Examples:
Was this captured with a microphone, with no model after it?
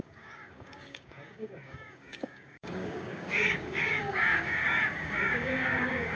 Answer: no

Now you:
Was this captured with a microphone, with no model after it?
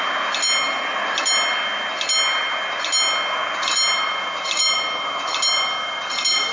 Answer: yes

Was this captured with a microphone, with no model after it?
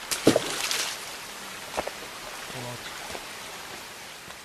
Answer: yes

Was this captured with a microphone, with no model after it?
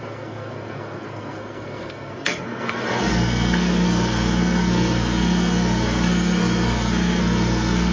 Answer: no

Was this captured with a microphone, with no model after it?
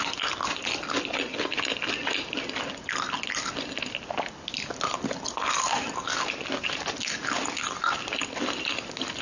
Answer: yes